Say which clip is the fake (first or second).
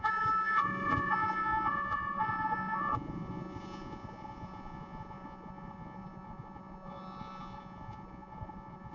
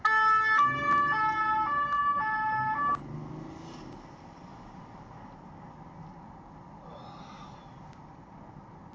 first